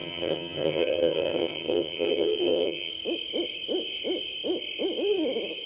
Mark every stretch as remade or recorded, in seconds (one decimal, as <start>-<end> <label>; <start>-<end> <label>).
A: 0.0-2.9 remade; 2.9-5.7 recorded